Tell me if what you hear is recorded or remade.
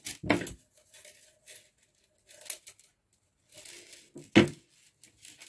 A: recorded